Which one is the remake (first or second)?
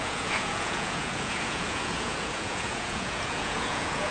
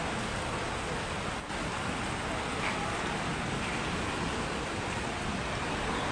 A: first